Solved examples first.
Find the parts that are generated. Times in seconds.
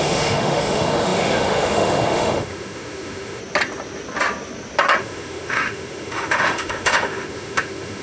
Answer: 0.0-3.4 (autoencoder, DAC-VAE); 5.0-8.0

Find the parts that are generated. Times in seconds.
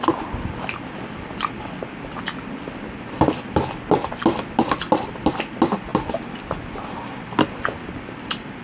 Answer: none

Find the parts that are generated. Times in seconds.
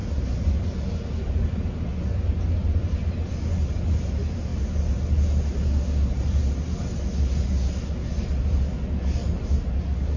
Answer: none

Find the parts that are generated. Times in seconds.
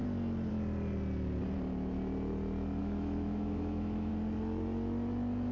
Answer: 2.8-4.1 (autoencoder, DAC-VAE)